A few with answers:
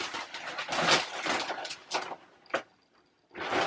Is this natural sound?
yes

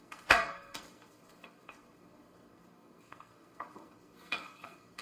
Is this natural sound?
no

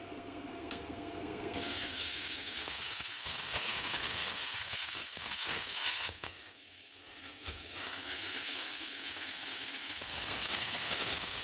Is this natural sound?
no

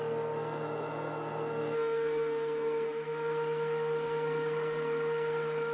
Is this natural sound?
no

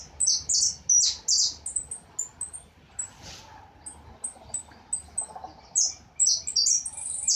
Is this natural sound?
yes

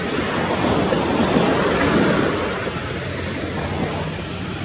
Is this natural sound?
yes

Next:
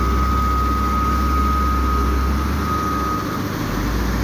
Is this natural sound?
yes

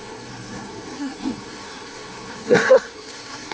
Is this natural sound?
no